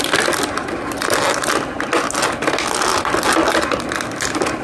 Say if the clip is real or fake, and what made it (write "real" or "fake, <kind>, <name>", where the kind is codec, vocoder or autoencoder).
real